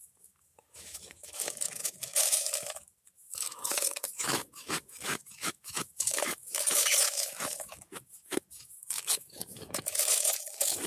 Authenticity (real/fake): fake